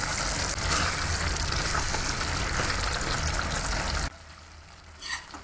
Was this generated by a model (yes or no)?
no